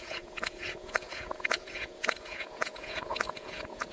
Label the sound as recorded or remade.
remade